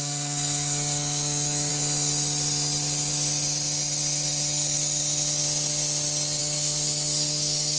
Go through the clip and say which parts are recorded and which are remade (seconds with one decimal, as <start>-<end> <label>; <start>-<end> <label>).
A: 0.0-1.7 remade; 1.7-6.4 recorded; 6.4-7.8 remade